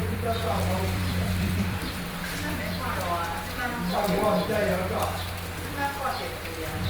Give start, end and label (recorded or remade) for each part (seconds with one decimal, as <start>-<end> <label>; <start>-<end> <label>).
0.0-2.2 remade; 2.2-5.6 recorded; 5.6-6.9 remade